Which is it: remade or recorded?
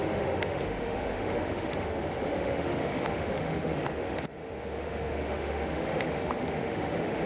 remade